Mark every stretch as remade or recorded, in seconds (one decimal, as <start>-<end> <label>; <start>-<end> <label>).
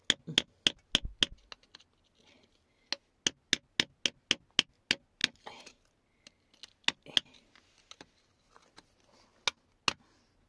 0.0-10.5 recorded